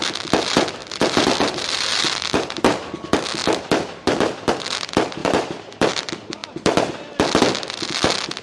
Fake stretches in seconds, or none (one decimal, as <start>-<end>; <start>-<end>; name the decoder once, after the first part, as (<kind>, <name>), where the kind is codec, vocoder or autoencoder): 0.8-2.6 (vocoder, BigVGAN v2); 3.4-4.5; 5.2-5.9